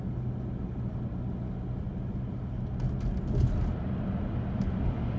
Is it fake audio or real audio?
real